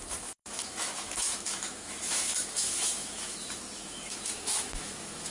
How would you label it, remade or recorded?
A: remade